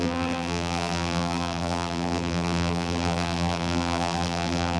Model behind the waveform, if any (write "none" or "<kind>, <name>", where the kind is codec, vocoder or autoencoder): vocoder, BigVGAN v2